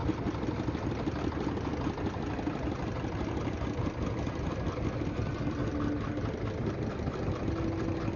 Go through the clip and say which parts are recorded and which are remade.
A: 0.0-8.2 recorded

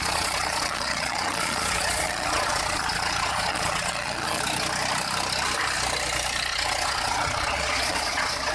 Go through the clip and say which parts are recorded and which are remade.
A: 0.0-4.4 remade; 4.4-6.5 recorded; 6.5-8.5 remade

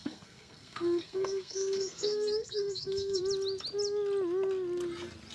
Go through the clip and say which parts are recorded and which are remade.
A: 0.0-3.2 remade; 3.2-5.3 recorded